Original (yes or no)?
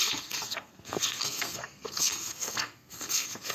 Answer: no